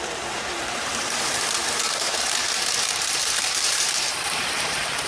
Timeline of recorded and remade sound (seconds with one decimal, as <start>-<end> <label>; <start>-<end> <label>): 0.0-5.1 remade